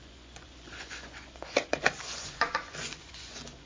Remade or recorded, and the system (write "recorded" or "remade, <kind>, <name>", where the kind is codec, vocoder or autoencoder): remade, vocoder, Vocos